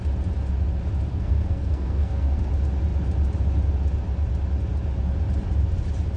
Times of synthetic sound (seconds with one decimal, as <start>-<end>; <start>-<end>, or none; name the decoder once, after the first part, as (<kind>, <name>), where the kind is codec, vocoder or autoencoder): 1.1-2.5 (codec, SNAC)